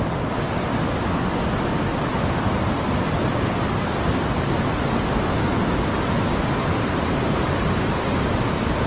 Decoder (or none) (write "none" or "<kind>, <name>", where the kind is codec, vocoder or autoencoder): none